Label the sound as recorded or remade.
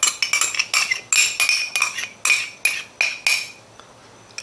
recorded